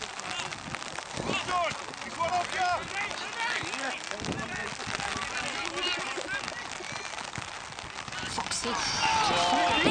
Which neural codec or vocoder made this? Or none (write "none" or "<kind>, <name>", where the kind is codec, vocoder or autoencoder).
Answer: none